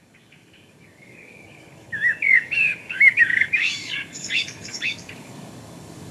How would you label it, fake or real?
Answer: fake